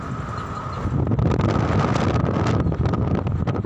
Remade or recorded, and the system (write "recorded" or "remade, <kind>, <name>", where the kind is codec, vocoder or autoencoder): recorded